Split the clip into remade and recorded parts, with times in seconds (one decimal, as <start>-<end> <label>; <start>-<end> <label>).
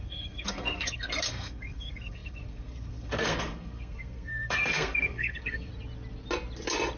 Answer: 0.0-5.7 remade; 5.7-7.0 recorded